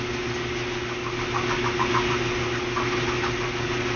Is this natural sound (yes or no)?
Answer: yes